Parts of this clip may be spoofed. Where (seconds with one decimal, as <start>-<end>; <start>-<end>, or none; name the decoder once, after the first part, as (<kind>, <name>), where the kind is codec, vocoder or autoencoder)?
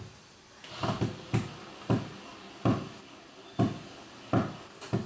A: none